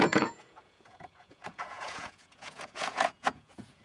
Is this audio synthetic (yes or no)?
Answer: yes